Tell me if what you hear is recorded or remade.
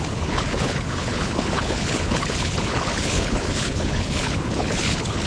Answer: remade